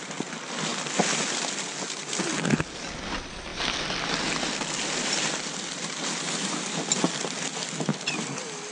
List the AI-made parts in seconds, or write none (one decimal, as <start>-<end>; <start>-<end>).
none